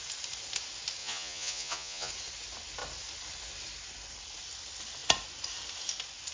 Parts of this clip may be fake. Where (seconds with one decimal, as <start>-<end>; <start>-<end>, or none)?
1.0-2.1